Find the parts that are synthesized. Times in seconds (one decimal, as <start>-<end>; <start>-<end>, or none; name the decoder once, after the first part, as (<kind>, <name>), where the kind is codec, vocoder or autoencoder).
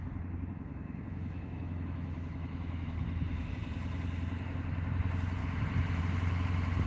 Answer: 0.7-3.5 (autoencoder, DAC-VAE); 5.4-6.0